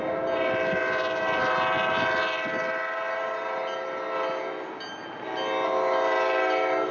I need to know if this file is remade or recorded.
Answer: recorded